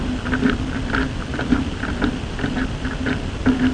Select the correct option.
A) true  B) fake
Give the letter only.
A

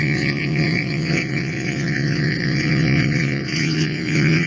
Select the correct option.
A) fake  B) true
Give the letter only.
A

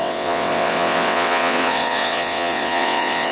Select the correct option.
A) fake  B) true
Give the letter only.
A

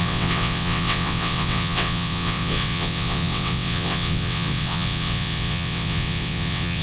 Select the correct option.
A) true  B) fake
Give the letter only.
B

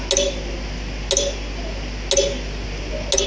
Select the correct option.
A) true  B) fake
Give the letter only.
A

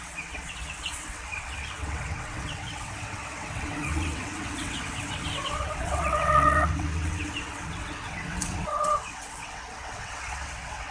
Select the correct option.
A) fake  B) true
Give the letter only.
A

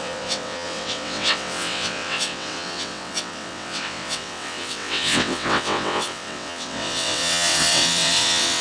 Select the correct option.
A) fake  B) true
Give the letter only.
A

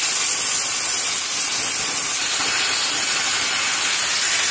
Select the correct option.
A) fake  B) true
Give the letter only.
B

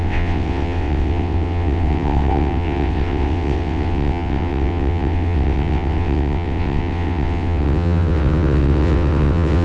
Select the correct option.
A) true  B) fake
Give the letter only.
B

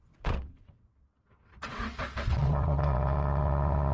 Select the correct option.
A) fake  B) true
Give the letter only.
A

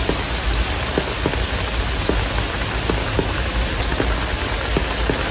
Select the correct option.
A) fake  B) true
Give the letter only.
B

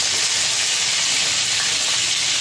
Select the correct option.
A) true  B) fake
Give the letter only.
A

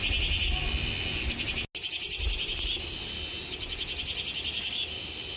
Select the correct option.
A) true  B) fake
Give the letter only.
A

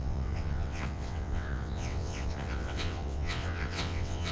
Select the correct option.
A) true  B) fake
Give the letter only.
B